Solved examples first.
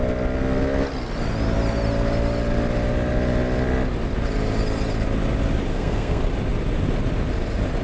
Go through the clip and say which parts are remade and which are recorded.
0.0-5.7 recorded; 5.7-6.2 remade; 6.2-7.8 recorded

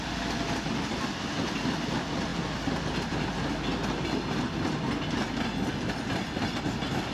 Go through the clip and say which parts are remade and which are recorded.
0.0-7.1 recorded

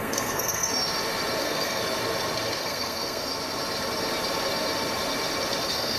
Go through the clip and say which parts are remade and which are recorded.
0.0-0.7 remade; 0.7-1.4 recorded; 1.4-1.8 remade; 1.8-2.6 recorded; 2.6-3.3 remade; 3.3-5.6 recorded; 5.6-6.0 remade

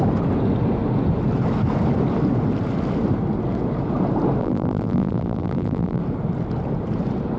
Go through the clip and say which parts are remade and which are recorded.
0.0-4.4 recorded; 4.4-6.0 remade; 6.0-7.4 recorded

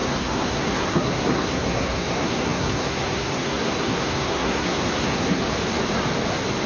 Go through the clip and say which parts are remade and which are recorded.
0.0-5.4 remade; 5.4-6.7 recorded

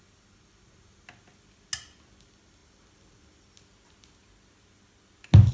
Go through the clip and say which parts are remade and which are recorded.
0.0-5.5 recorded

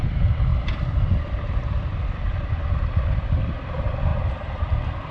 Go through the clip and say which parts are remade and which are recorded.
0.0-5.1 remade

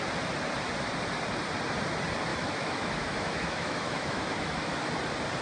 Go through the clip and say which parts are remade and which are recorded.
0.0-2.3 recorded; 2.3-4.9 remade; 4.9-5.4 recorded